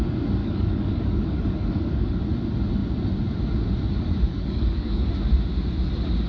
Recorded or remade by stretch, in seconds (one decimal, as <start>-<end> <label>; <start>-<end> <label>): 0.0-0.4 recorded; 0.4-2.2 remade; 2.2-4.3 recorded; 4.3-5.1 remade; 5.1-6.3 recorded